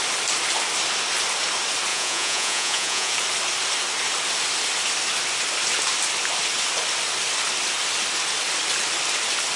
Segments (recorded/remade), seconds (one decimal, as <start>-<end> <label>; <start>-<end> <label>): 0.0-1.9 recorded; 1.9-3.1 remade; 3.1-9.6 recorded